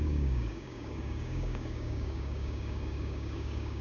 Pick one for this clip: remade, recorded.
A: remade